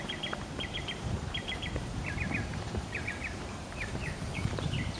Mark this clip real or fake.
fake